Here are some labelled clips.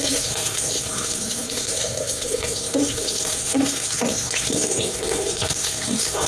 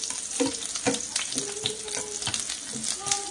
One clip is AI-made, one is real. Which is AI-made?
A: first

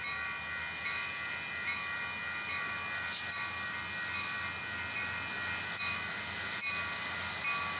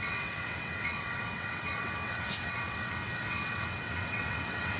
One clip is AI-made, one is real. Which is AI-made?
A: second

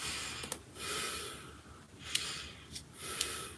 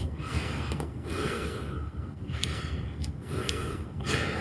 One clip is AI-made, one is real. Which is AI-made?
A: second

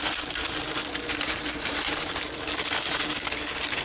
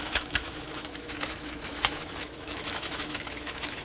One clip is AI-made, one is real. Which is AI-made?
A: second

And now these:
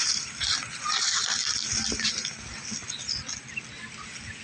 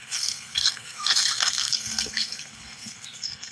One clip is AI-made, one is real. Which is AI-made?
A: second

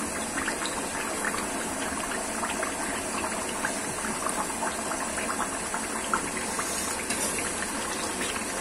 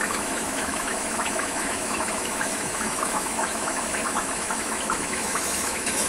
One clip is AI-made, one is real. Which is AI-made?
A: second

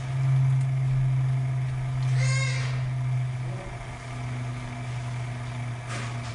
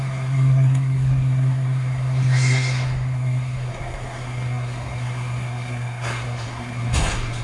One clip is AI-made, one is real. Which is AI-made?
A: second